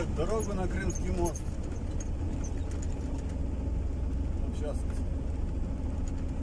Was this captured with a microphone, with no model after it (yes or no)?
yes